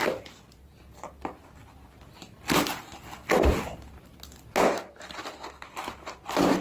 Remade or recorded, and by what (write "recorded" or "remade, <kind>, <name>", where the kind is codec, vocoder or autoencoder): recorded